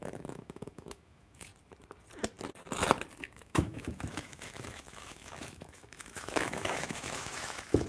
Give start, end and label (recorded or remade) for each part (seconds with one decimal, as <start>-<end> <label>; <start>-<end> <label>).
0.0-1.5 remade; 1.5-3.2 recorded; 3.2-7.9 remade